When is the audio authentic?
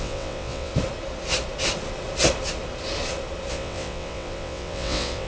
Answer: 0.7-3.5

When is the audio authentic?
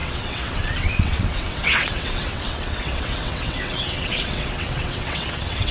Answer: none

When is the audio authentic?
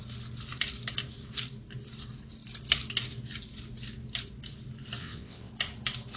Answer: 0.0-5.0; 5.5-6.2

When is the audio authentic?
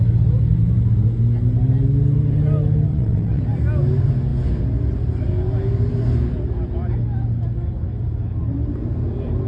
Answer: 0.0-2.9; 3.4-9.5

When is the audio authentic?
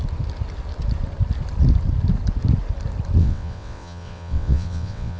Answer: 0.0-3.2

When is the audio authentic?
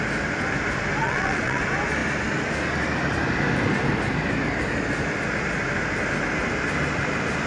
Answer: 0.0-1.0; 1.6-7.5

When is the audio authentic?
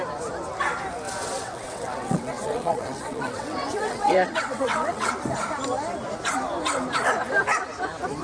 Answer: 0.0-1.2; 5.1-8.2